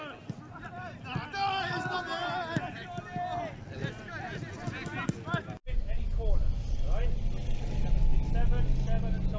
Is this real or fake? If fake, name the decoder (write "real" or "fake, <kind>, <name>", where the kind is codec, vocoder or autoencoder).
real